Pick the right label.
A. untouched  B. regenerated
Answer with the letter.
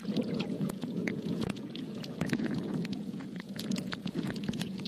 B